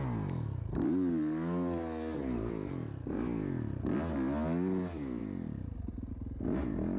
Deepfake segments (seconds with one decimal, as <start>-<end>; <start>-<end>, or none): none